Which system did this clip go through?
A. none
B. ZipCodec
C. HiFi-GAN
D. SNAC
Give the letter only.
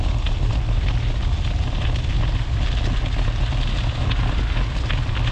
A